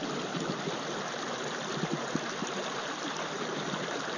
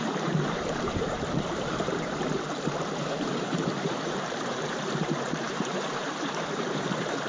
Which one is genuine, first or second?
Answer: first